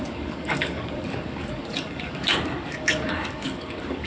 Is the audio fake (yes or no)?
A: yes